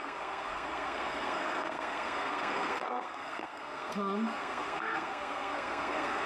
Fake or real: fake